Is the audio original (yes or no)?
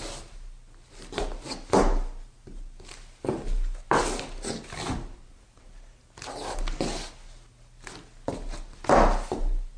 yes